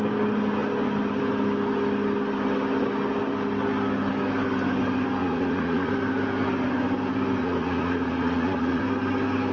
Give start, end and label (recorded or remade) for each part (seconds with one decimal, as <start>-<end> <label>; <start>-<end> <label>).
0.0-5.2 recorded; 5.2-5.9 remade; 5.9-7.4 recorded; 7.4-8.8 remade; 8.8-9.5 recorded